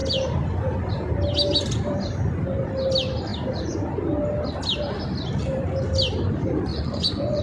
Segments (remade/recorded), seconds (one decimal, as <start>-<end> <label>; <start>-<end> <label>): 0.0-6.7 recorded; 6.7-7.4 remade